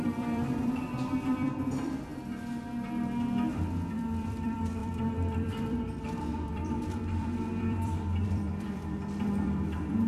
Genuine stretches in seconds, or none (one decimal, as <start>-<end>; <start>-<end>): 2.1-3.5